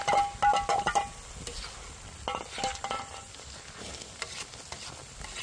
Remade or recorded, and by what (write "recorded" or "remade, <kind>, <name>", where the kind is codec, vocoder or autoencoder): recorded